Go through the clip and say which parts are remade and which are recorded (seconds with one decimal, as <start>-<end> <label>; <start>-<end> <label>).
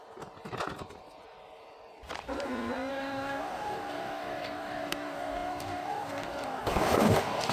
0.0-2.9 recorded; 2.9-7.5 remade